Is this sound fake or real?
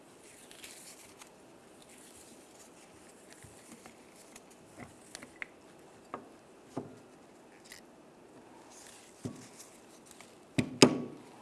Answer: real